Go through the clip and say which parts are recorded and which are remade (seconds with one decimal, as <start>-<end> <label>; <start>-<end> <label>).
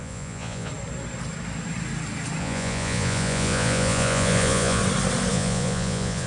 0.0-0.7 remade; 0.7-2.4 recorded; 2.4-4.8 remade; 4.8-5.3 recorded; 5.3-6.3 remade